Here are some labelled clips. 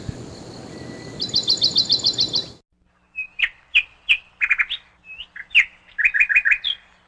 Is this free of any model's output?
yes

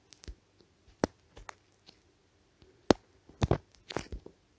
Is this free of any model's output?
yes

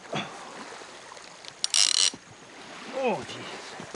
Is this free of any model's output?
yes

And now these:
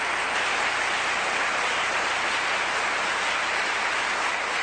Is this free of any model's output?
yes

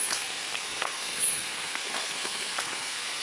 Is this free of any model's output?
no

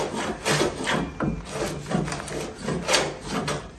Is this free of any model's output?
yes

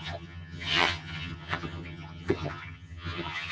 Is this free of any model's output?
no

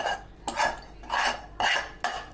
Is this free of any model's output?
yes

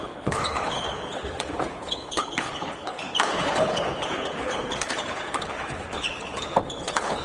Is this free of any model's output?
no